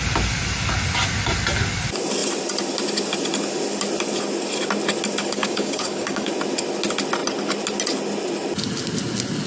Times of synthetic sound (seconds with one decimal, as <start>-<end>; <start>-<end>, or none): 5.2-6.3